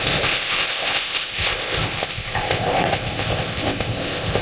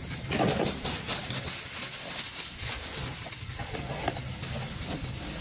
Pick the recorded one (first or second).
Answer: second